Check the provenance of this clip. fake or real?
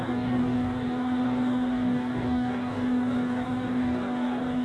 fake